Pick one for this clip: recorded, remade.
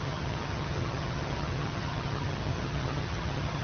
remade